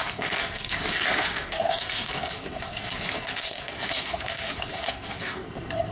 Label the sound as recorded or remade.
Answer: remade